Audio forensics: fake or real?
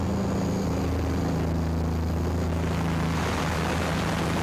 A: real